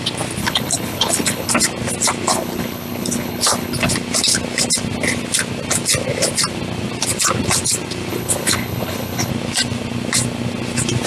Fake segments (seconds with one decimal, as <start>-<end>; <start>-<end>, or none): 0.4-1.5; 2.3-3.9; 8.1-9.3